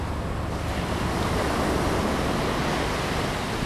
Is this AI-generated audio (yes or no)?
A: no